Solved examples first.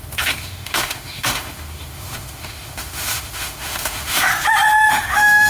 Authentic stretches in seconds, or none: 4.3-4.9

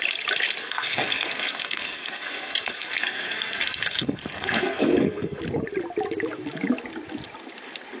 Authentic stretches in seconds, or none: 0.0-0.6; 5.4-8.0

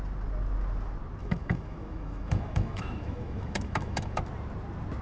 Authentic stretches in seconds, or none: 0.0-1.2; 4.2-5.0

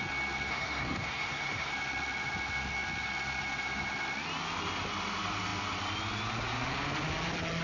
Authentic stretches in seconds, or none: 0.0-0.5; 1.7-7.6

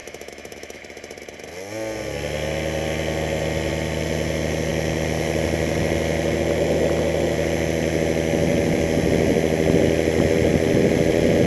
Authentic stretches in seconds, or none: 0.8-11.5

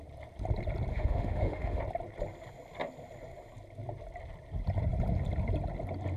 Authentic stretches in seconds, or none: 0.0-0.9; 1.8-6.2

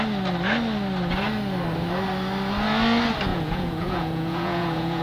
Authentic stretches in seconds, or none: 0.0-3.3

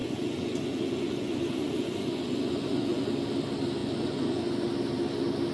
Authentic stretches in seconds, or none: 3.1-3.8; 4.7-5.5